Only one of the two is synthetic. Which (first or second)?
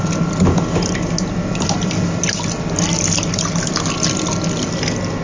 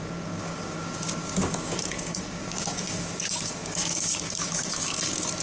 second